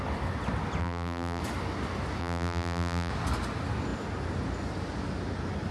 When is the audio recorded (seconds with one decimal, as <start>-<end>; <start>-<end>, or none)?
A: 0.0-0.8; 1.4-2.2; 3.1-5.7